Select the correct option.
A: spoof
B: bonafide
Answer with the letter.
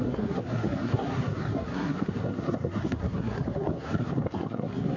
A